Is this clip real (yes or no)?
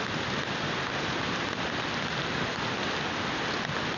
yes